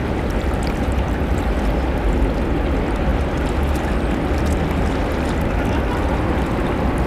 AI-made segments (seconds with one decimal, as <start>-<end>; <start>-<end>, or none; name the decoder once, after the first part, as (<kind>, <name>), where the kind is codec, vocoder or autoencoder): none